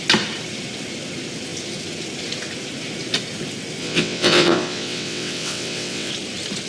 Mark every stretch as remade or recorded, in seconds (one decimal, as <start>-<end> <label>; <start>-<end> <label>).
0.0-3.8 recorded; 3.8-6.1 remade; 6.1-6.7 recorded

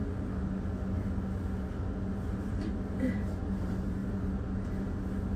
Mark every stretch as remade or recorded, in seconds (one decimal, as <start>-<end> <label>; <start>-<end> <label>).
0.0-2.4 recorded; 2.4-4.0 remade; 4.0-5.4 recorded